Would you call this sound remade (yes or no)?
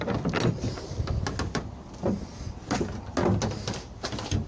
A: no